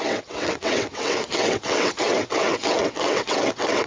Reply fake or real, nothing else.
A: fake